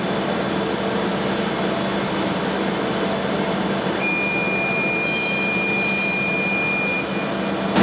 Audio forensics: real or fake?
real